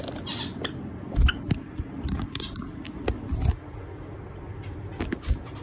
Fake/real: real